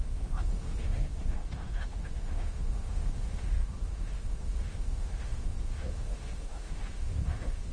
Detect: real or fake fake